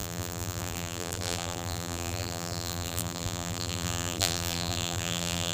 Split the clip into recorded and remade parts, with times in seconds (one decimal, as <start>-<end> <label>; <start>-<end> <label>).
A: 0.0-5.5 remade